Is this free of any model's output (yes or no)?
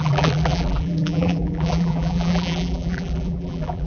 no